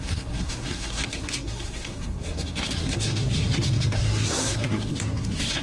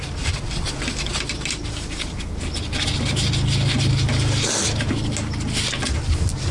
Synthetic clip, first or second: first